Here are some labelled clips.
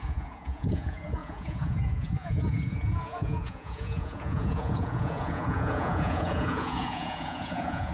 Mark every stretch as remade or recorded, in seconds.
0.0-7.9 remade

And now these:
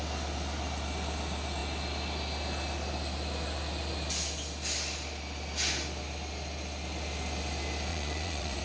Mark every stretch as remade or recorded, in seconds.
0.0-7.9 recorded; 7.9-8.6 remade

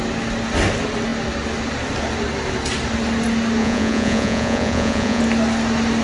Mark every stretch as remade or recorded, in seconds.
0.0-3.6 recorded; 3.6-5.2 remade; 5.2-6.0 recorded

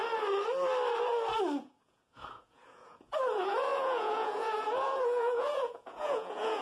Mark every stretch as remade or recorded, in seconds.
0.0-1.6 recorded; 1.6-6.6 remade

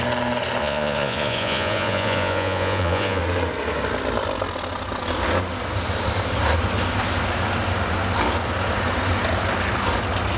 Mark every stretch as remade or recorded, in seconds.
0.0-0.6 recorded; 0.6-3.2 remade; 3.2-10.4 recorded

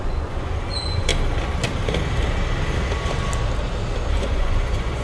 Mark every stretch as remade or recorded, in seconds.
0.0-1.1 remade; 1.1-4.1 recorded; 4.1-5.0 remade

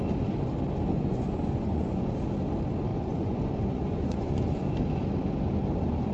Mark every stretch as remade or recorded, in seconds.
0.0-0.9 recorded; 0.9-2.1 remade; 2.1-2.9 recorded; 2.9-4.6 remade; 4.6-6.1 recorded